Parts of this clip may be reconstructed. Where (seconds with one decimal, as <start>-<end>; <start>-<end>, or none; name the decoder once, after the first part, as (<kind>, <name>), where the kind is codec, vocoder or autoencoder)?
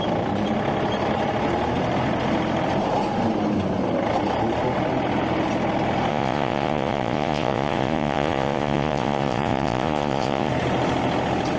6.1-10.5 (vocoder, Vocos)